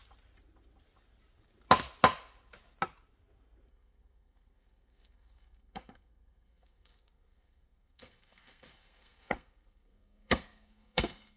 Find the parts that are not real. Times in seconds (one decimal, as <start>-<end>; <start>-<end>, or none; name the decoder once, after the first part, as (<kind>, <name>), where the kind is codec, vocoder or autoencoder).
3.7-11.4 (codec, SNAC)